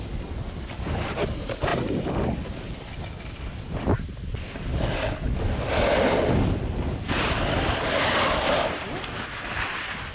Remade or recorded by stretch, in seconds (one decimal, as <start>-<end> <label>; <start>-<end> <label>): 0.0-10.1 recorded

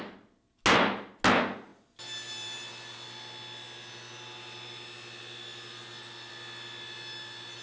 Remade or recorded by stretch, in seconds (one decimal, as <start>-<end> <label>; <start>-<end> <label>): 0.0-7.6 recorded

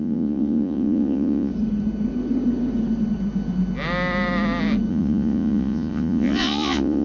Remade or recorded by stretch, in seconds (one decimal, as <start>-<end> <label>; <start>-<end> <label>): 0.0-1.5 remade; 1.5-4.9 recorded; 4.9-7.0 remade

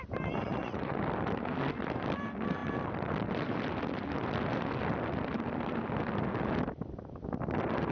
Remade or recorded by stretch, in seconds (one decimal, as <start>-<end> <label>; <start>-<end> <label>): 0.0-0.4 recorded; 0.4-1.0 remade; 1.0-7.9 recorded

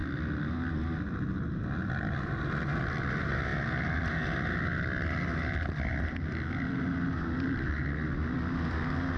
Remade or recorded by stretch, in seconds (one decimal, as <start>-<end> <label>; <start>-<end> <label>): 0.0-9.2 recorded